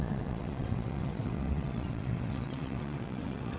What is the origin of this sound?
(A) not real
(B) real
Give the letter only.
A